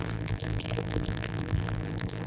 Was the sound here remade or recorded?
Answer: remade